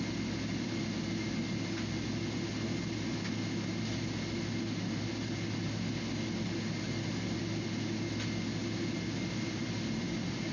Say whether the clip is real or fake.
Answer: real